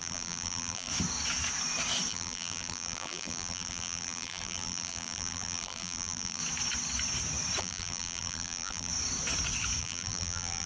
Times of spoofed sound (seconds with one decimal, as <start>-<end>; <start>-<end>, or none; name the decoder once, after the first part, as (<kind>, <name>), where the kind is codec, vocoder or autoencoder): 0.0-0.9 (vocoder, BigVGAN v2); 2.1-6.4; 7.6-8.9; 9.8-10.7